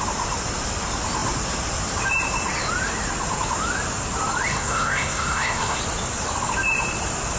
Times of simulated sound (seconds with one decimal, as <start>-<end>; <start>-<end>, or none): 4.5-5.8